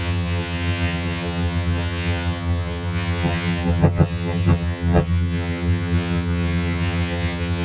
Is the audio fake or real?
fake